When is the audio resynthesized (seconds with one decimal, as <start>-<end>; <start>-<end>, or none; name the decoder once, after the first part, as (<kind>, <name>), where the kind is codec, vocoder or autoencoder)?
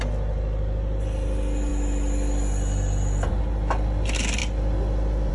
none